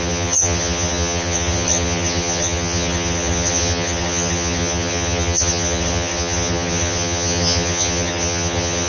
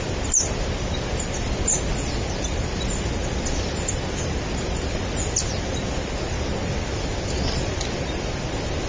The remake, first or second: first